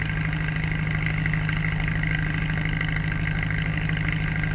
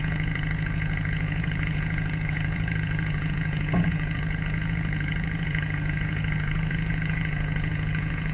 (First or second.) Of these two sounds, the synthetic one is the second